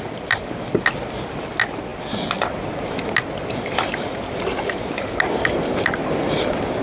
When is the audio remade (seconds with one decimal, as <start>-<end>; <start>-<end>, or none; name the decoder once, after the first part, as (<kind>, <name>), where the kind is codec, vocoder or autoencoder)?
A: none

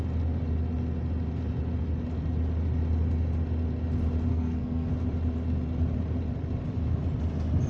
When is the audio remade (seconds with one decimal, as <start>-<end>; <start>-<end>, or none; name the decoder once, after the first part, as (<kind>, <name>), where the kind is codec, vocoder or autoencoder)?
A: 4.3-4.9 (codec, SNAC)